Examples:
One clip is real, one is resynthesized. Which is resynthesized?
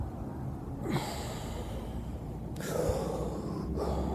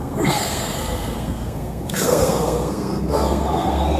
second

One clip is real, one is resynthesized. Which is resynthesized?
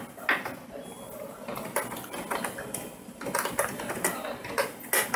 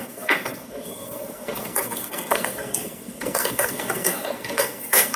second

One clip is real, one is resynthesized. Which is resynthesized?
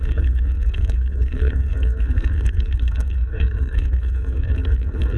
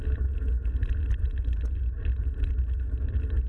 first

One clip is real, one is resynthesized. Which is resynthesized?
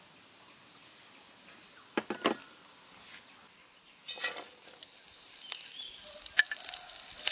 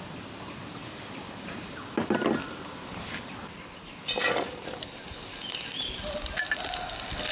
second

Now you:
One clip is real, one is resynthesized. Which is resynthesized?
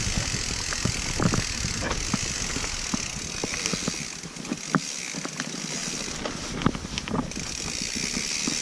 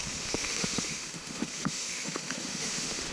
second